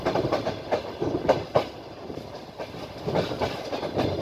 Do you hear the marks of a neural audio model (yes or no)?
no